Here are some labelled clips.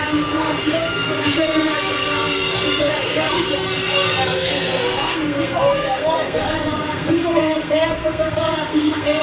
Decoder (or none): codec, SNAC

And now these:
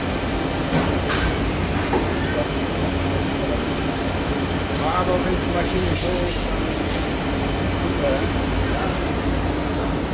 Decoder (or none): none